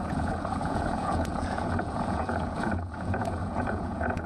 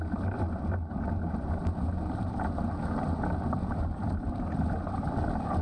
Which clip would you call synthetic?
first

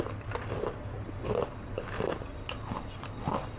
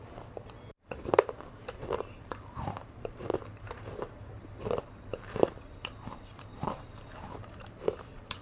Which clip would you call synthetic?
second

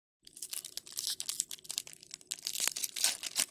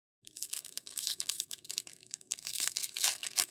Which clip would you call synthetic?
second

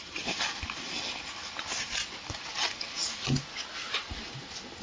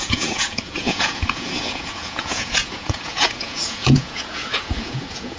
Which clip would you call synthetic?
second